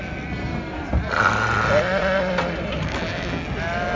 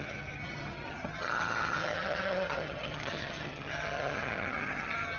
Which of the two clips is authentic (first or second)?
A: first